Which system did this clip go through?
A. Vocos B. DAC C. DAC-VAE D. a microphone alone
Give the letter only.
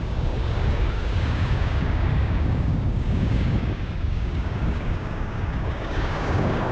B